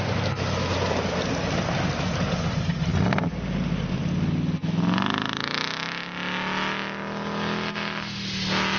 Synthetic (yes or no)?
no